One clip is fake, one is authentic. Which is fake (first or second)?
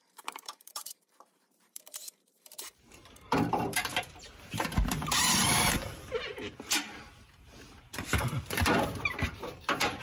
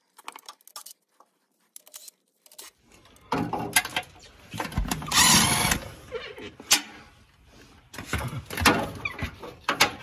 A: first